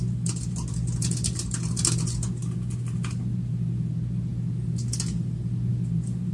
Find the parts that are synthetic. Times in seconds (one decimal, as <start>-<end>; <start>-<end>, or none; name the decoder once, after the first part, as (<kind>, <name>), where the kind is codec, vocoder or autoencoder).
none